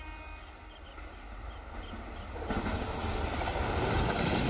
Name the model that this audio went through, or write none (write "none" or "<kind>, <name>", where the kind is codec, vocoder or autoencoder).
none